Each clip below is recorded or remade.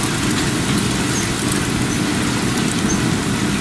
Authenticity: recorded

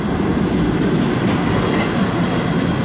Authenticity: recorded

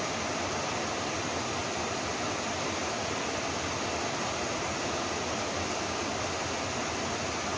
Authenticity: recorded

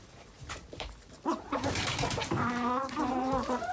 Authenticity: remade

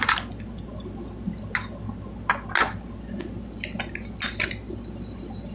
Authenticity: recorded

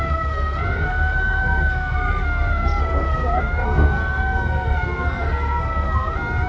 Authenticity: remade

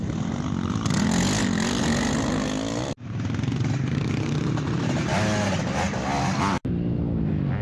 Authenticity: recorded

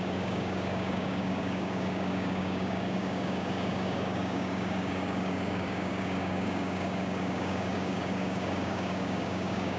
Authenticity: remade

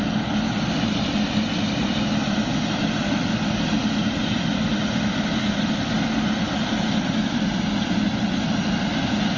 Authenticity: recorded